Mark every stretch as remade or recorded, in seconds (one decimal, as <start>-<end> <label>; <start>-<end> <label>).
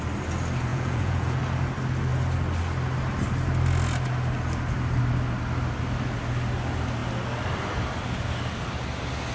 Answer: 0.0-0.7 recorded; 0.7-1.4 remade; 1.4-9.3 recorded